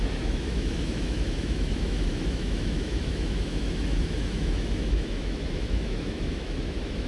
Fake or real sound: fake